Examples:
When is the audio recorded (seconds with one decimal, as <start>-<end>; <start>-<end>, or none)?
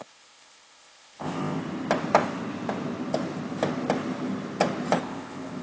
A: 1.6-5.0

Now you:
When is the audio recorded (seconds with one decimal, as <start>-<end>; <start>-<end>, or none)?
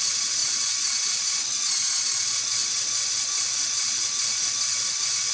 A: 0.0-5.3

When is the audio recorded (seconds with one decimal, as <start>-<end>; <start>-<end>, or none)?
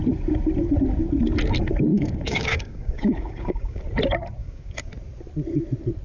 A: 0.0-1.9; 3.8-4.4; 4.9-6.0